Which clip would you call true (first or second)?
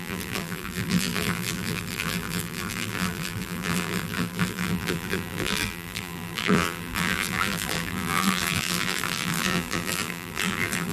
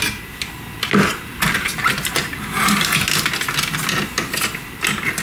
second